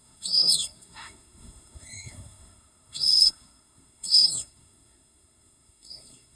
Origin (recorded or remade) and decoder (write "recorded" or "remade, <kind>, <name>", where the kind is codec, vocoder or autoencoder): remade, codec, SNAC